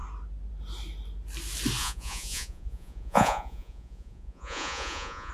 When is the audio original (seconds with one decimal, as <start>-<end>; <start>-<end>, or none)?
0.0-1.8